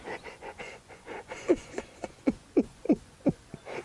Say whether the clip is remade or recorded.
remade